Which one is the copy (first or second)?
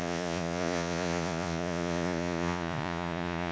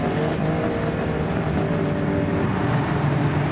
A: first